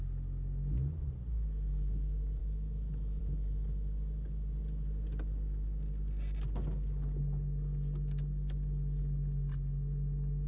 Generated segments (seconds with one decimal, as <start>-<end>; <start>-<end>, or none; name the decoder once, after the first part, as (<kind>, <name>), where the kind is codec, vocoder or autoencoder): 2.4-3.2 (autoencoder, DAC-VAE)